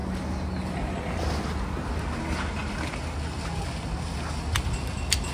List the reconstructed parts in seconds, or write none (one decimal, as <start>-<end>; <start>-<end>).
none